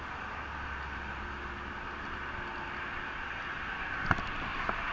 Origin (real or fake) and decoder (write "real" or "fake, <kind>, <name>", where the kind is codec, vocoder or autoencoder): real